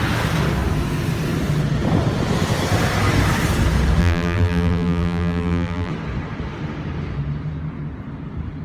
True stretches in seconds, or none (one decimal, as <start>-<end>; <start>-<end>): 0.0-4.0; 5.9-8.6